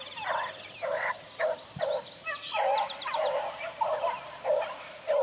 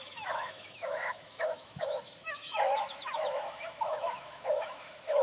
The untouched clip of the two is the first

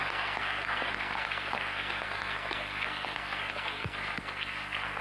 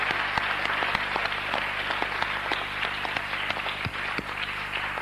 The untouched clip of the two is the second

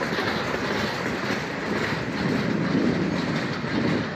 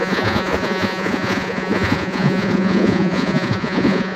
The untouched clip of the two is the first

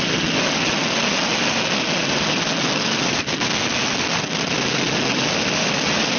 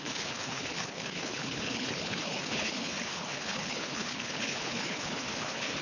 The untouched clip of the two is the first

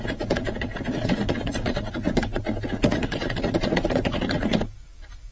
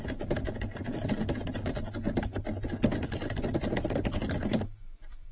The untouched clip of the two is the second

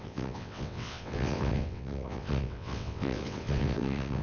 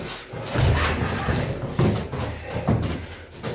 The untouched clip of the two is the second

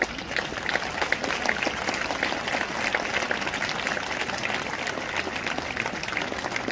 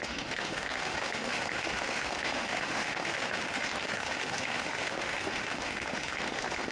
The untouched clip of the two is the first